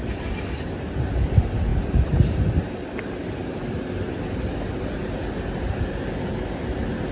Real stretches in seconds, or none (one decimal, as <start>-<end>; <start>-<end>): 0.0-7.1